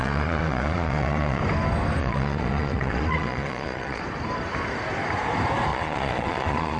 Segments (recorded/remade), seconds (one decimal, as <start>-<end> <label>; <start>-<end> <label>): 0.0-1.4 remade; 1.4-2.0 recorded; 2.0-4.0 remade; 4.0-5.7 recorded; 5.7-6.8 remade